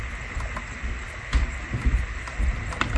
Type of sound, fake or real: real